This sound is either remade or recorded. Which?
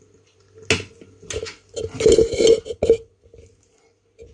recorded